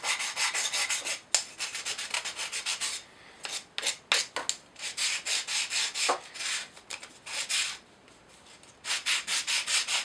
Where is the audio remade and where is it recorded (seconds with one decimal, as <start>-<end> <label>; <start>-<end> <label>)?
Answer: 0.0-10.0 recorded